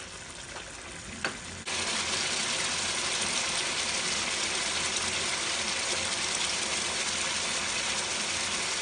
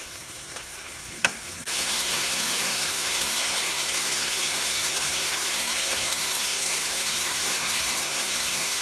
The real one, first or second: first